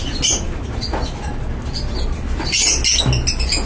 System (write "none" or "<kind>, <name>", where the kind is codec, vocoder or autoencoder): none